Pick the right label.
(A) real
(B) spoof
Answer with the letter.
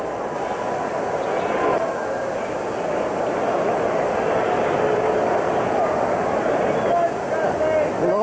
A